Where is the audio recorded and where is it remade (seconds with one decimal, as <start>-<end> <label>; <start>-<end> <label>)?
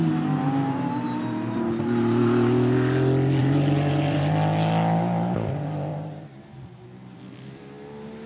0.0-3.4 recorded; 3.4-4.3 remade; 4.3-5.9 recorded; 5.9-6.4 remade; 6.4-8.3 recorded